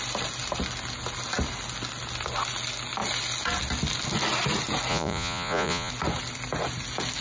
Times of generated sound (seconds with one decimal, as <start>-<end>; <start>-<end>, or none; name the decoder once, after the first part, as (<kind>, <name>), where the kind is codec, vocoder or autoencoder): 4.9-5.9 (vocoder, Vocos)